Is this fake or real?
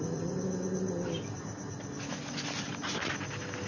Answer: real